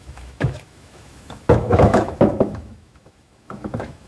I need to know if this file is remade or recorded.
remade